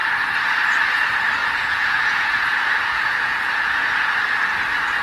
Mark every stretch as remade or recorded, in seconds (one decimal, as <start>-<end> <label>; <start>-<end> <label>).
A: 0.0-1.4 recorded; 1.4-4.1 remade; 4.1-5.0 recorded